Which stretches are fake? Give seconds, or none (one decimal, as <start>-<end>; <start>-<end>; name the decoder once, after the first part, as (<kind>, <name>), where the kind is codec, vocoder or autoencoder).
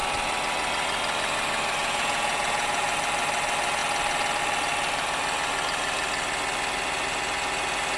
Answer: 1.8-2.8 (vocoder, Vocos)